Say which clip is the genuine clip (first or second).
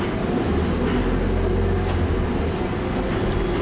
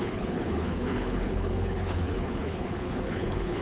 first